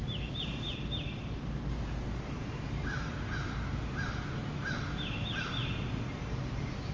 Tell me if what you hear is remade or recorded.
recorded